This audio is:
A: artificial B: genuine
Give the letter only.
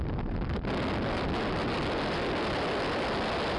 B